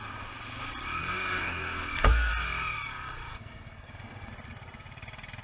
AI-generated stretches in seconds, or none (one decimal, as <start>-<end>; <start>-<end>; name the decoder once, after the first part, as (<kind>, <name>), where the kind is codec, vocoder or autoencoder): 1.0-2.3 (codec, SNAC); 3.3-4.3